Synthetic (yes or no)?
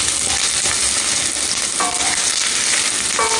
no